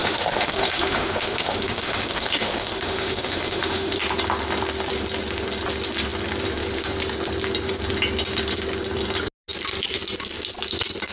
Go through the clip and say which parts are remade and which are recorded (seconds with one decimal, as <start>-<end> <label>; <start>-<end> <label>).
0.0-4.0 remade; 4.0-11.1 recorded